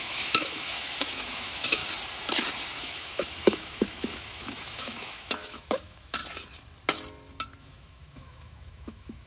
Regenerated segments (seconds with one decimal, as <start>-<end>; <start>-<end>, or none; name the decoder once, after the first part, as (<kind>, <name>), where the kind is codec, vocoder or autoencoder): 0.0-1.8 (autoencoder, DAC-VAE); 2.8-6.2; 7.6-9.3